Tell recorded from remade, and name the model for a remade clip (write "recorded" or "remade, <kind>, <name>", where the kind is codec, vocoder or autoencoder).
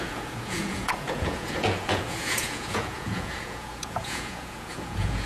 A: remade, vocoder, Vocos